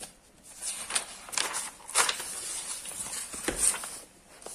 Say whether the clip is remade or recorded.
recorded